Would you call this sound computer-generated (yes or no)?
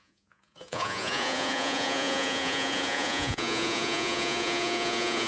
yes